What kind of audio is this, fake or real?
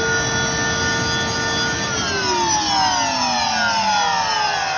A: real